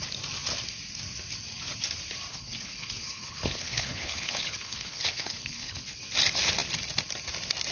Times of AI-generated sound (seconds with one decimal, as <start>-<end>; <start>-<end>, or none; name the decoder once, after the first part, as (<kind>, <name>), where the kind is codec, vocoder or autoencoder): 2.3-6.0 (codec, HILCodec)